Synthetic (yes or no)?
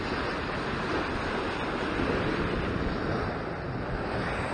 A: no